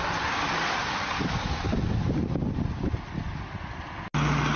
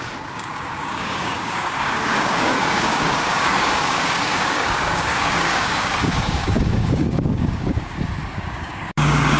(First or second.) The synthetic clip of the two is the second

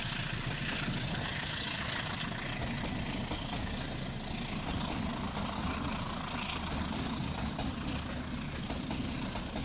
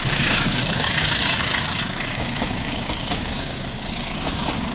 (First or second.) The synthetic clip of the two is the second